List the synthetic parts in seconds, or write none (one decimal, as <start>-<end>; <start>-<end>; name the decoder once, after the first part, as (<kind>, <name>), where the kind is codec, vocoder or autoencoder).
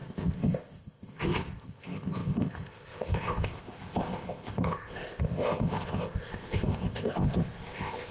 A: 0.0-8.1 (codec, ZipCodec)